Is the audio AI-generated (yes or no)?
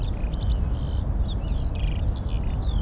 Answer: no